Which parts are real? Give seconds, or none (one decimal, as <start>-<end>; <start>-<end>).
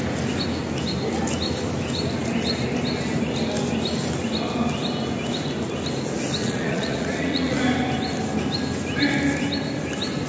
0.0-6.4; 7.6-10.3